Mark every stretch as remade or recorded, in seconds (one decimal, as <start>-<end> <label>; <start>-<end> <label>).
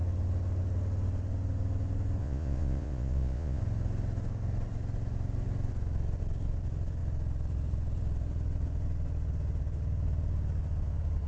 0.0-2.2 recorded; 2.2-3.6 remade; 3.6-11.3 recorded